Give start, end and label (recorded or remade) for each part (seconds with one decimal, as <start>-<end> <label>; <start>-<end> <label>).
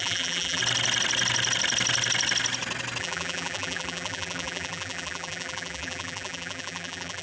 0.0-0.6 remade; 0.6-3.0 recorded; 3.0-7.2 remade